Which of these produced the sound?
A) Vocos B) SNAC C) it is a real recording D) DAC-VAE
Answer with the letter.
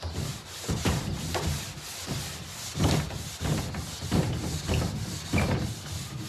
C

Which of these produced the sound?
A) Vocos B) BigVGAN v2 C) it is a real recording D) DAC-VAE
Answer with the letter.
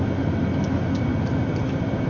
C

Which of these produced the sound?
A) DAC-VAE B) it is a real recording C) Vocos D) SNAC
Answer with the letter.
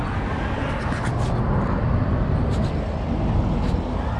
B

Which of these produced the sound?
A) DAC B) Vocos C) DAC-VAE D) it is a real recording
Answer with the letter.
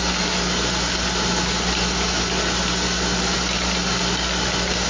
D